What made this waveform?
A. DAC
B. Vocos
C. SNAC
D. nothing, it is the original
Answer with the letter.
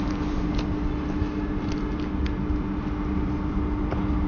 D